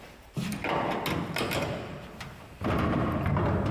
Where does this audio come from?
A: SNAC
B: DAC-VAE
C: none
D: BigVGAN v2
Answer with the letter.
C